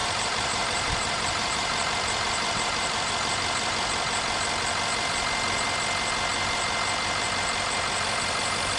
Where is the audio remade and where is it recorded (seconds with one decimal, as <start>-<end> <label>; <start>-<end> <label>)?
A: 0.0-3.1 remade; 3.1-8.8 recorded